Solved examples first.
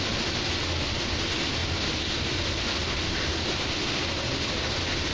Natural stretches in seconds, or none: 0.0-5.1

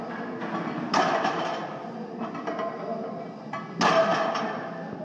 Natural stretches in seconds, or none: 0.0-5.0

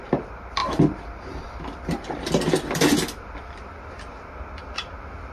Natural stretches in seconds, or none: 0.6-3.8

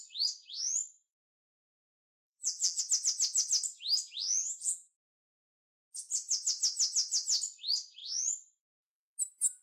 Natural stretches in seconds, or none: 0.0-1.9; 2.8-4.4; 5.4-9.6

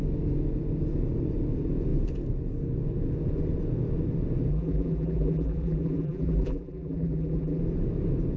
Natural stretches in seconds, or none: 0.0-4.5; 7.6-8.4

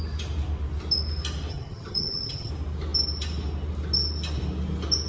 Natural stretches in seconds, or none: 0.0-1.5; 2.5-5.1

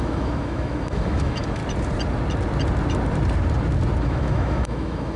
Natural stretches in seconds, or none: 1.6-4.0